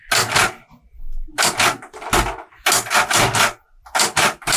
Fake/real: real